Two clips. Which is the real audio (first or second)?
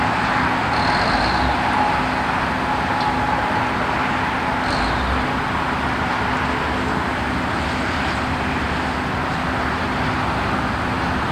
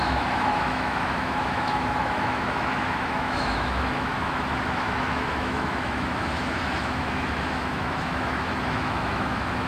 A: first